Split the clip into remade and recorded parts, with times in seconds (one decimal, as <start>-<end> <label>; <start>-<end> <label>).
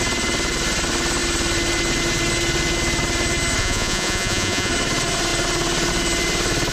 0.0-3.6 recorded; 3.6-4.7 remade; 4.7-6.7 recorded